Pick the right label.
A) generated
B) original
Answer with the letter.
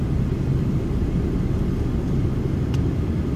B